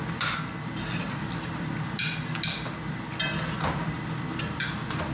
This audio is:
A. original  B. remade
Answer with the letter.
A